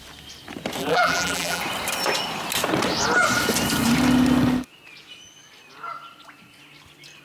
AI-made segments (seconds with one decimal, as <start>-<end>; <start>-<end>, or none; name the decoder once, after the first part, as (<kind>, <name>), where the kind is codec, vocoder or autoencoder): 0.8-1.6 (vocoder, BigVGAN v2)